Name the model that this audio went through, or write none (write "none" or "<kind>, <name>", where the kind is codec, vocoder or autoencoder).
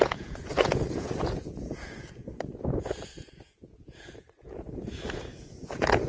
vocoder, Vocos